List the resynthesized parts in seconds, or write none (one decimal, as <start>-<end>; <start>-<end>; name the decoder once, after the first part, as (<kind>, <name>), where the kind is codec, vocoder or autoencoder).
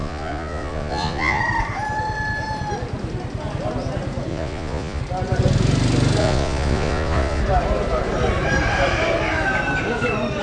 0.0-1.4 (vocoder, Vocos); 4.3-5.0; 6.2-7.4